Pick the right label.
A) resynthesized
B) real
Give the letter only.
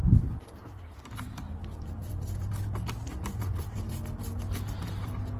B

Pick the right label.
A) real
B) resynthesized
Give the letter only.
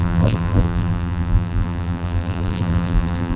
B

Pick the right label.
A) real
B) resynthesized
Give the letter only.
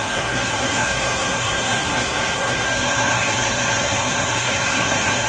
B